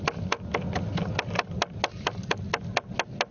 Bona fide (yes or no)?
yes